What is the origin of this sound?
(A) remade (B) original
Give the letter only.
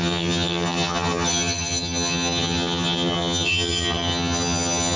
A